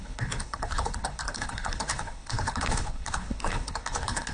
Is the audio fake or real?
fake